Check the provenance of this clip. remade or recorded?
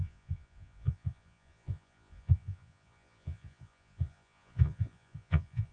remade